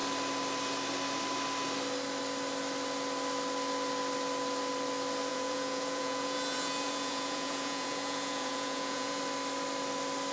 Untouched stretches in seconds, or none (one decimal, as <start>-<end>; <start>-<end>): 0.0-5.3; 9.2-10.3

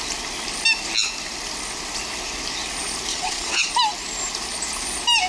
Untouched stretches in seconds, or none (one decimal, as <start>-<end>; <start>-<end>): 0.0-3.1; 3.7-5.3

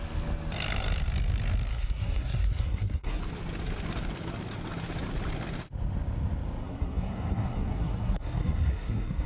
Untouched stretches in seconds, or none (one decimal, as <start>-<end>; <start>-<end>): 0.0-1.7; 3.2-6.6

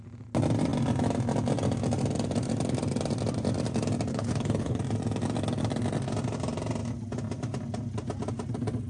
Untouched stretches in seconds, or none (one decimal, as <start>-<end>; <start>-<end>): 0.0-4.1; 4.8-8.9

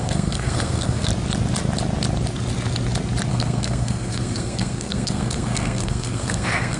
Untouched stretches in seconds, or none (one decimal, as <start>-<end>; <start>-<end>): 1.1-3.3